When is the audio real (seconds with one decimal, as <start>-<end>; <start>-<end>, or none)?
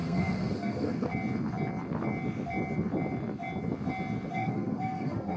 1.1-4.3